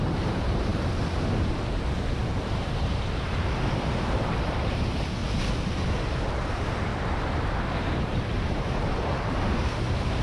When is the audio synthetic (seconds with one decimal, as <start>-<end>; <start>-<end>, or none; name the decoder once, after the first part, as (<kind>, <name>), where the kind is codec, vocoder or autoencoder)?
0.0-5.2 (vocoder, BigVGAN v2); 6.3-6.9; 7.4-10.2